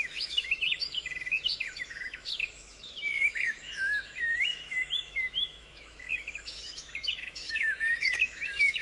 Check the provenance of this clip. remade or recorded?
remade